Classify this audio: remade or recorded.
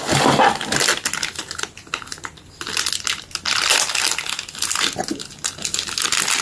recorded